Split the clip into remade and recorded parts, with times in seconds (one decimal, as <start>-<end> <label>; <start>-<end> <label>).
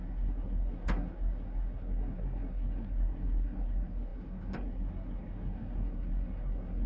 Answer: 0.0-6.9 remade